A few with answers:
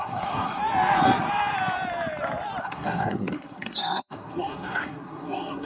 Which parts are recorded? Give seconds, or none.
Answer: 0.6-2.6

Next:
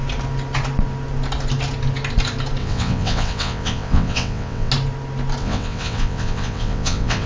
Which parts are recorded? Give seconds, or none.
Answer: 0.0-2.6; 4.7-5.4